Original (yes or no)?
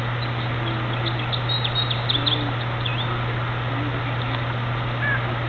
yes